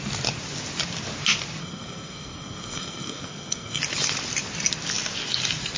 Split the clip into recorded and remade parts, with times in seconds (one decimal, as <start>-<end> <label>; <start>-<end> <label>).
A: 0.0-1.6 recorded; 1.6-3.8 remade; 3.8-5.8 recorded